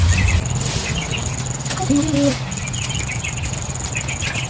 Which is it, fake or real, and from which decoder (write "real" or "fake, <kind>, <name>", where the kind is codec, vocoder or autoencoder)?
real